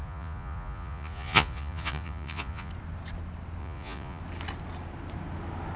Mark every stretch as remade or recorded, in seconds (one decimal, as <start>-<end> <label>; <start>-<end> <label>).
0.0-2.7 remade; 2.7-3.6 recorded; 3.6-4.2 remade; 4.2-5.8 recorded